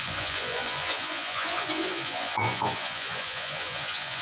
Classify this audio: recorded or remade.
remade